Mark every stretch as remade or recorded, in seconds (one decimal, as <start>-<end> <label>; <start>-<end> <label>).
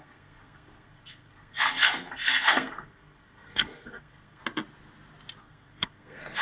0.0-4.4 remade; 4.4-5.4 recorded; 5.4-6.4 remade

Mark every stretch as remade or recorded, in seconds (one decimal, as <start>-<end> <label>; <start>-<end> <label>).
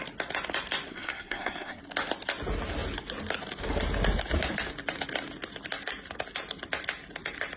0.0-0.9 recorded; 0.9-1.8 remade; 1.8-7.6 recorded